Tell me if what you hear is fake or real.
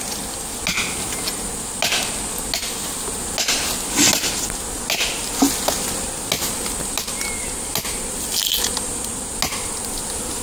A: real